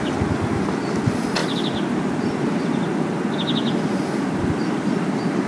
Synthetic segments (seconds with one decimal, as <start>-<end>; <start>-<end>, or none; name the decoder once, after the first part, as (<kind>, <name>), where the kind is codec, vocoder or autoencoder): none